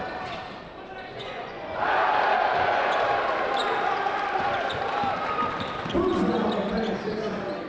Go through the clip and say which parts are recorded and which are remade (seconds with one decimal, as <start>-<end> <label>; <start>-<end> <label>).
0.0-1.1 recorded; 1.1-2.9 remade; 2.9-7.7 recorded